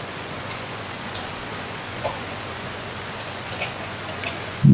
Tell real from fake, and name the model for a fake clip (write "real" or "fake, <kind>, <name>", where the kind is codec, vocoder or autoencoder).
fake, vocoder, Vocos